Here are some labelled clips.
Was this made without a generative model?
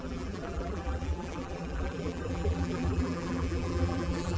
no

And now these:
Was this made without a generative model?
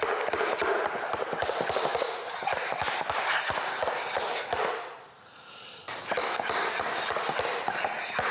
yes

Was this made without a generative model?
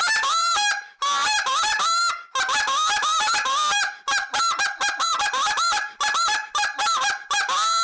no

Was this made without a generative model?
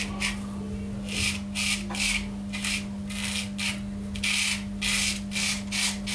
yes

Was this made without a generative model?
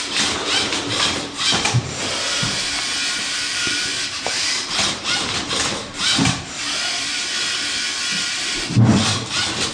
no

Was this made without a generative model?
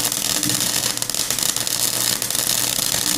no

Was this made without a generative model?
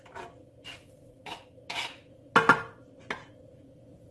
yes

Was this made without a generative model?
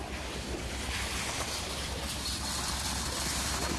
yes